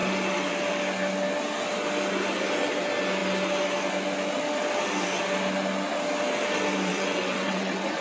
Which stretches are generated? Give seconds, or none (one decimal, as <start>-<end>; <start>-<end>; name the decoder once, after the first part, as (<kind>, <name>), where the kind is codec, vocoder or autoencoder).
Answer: 6.9-8.0 (vocoder, WaveNeXt)